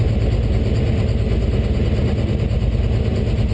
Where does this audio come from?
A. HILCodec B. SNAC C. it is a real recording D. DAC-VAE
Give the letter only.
C